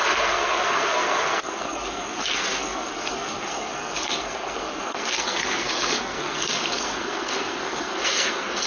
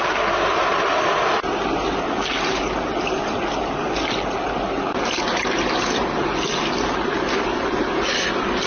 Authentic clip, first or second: second